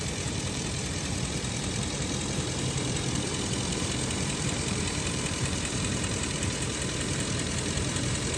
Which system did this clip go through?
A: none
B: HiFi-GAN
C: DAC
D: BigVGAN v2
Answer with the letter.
D